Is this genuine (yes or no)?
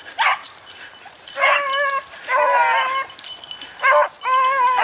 yes